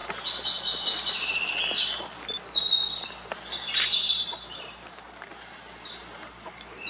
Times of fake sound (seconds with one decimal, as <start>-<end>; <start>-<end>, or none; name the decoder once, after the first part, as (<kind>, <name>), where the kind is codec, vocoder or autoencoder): none